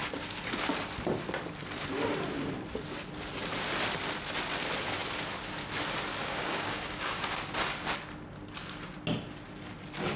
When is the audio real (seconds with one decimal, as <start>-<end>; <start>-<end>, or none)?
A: 0.0-6.2; 7.2-10.2